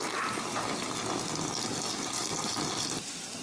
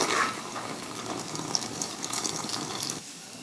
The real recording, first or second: first